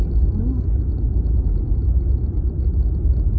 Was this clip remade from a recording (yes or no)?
no